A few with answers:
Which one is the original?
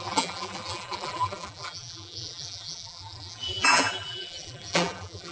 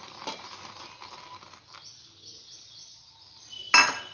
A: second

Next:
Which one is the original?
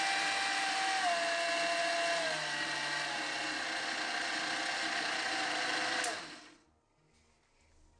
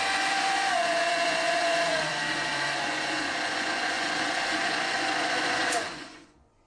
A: first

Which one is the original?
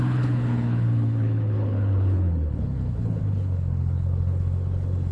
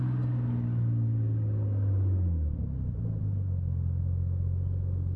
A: second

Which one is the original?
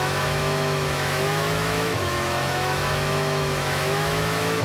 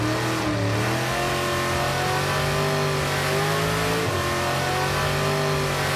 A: second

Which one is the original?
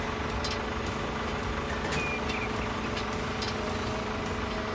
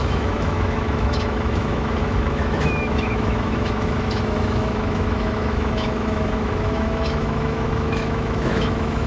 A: first